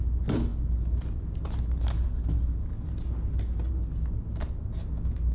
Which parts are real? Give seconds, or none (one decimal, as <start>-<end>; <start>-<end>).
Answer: 0.0-5.3